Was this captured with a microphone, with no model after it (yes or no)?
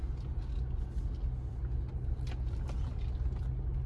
yes